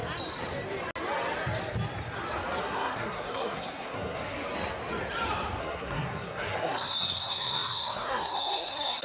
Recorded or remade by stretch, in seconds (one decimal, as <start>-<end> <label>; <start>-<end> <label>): 0.0-2.6 recorded; 2.6-4.4 remade; 4.4-5.6 recorded; 5.6-9.0 remade